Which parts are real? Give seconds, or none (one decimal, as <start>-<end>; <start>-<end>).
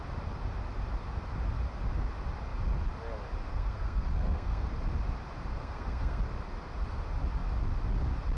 0.0-3.5; 4.7-5.6; 6.2-8.4